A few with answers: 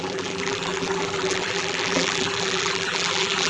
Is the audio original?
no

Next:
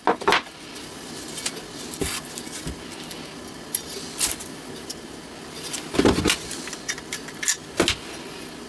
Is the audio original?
yes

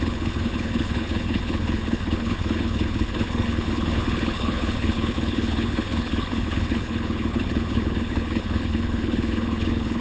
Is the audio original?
no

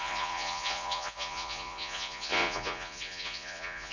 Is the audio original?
no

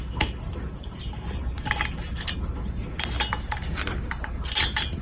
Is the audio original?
yes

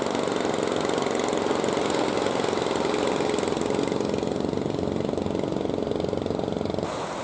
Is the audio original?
yes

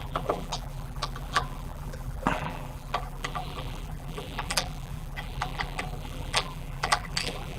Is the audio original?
no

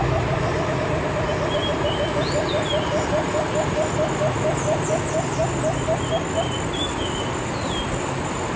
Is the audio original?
yes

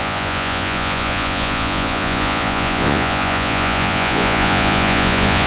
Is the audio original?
no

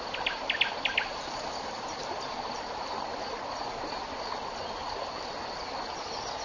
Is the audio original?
yes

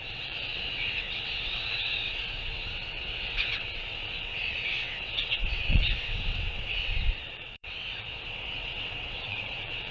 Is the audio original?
no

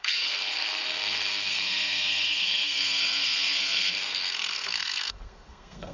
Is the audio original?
no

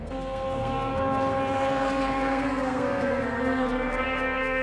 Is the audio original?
no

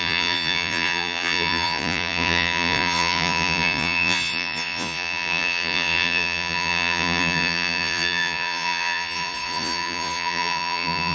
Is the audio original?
no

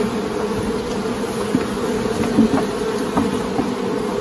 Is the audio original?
yes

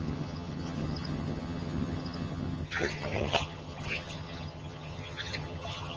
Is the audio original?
no